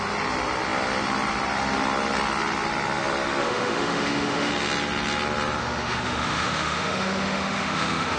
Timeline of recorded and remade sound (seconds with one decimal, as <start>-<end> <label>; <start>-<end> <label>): 0.0-3.4 recorded; 3.4-4.5 remade; 4.5-5.6 recorded; 5.6-8.2 remade